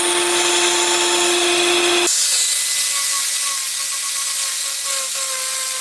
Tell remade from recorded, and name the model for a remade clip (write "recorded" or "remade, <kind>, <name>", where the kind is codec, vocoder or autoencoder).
recorded